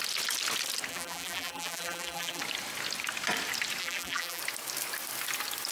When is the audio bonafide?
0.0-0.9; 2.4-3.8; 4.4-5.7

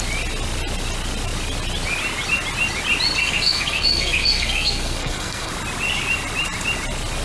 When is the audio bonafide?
0.0-3.2; 5.5-7.2

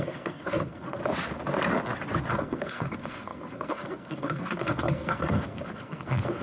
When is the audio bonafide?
1.0-2.3

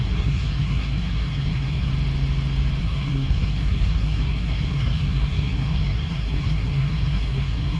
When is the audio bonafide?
1.9-2.8

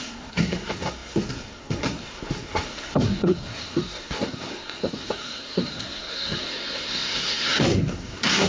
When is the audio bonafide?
none